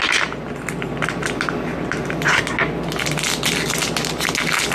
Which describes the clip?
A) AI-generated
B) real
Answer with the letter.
B